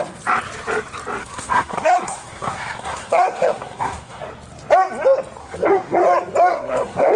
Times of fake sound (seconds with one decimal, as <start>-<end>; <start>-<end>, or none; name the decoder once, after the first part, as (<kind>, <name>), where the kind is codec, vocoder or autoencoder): 1.2-4.2 (codec, SNAC); 5.4-6.0; 6.5-7.2

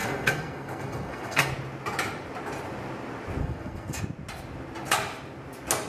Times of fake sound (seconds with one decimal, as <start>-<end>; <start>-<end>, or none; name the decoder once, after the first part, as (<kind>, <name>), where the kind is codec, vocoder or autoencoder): 0.0-1.5 (codec, SNAC); 3.4-4.0

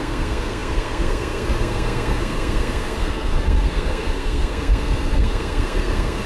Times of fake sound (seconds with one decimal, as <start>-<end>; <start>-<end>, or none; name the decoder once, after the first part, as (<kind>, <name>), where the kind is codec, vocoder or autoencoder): 0.0-6.3 (codec, SNAC)